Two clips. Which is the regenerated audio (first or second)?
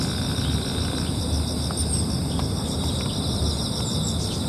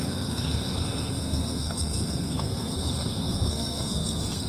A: second